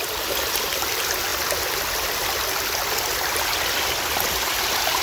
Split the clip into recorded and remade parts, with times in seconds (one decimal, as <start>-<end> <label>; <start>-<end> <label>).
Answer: 0.0-5.0 recorded